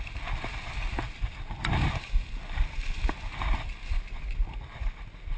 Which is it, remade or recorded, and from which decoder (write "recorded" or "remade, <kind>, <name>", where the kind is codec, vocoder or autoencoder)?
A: recorded